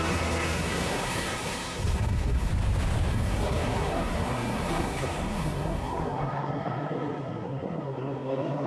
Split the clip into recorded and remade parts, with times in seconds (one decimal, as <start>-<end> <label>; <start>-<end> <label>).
0.0-2.5 remade; 2.5-3.1 recorded; 3.1-8.7 remade